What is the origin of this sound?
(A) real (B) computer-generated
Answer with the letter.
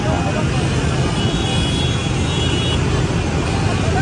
A